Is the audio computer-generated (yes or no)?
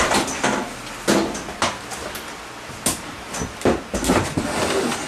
no